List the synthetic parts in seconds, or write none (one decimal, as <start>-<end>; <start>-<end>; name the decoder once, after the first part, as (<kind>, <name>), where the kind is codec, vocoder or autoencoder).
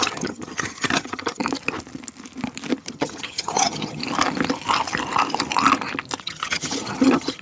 0.0-1.4 (vocoder, HiFi-GAN); 2.8-4.0; 6.2-7.4